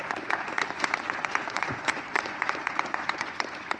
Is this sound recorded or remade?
remade